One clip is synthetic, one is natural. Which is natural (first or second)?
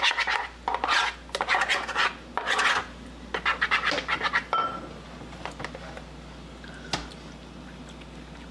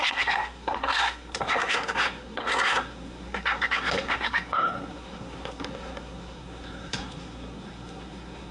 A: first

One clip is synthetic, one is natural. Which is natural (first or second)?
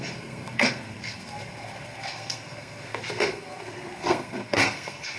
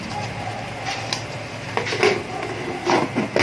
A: second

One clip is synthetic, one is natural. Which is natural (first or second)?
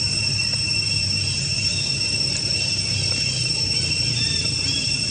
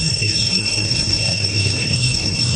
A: first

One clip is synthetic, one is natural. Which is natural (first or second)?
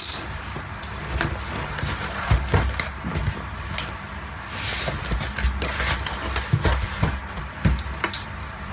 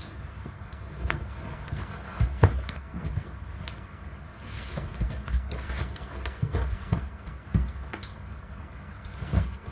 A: first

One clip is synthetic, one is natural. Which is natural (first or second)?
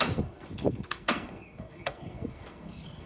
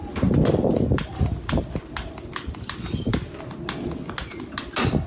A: second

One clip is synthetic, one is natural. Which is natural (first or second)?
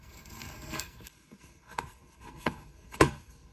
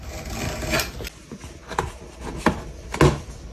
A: second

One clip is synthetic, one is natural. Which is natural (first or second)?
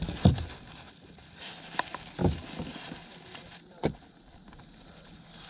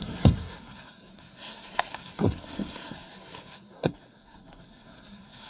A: first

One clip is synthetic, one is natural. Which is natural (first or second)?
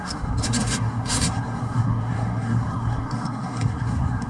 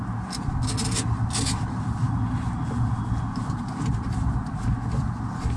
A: second